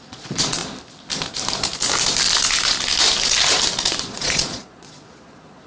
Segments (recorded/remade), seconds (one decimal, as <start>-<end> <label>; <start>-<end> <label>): 0.0-0.6 remade; 0.6-4.0 recorded; 4.0-5.7 remade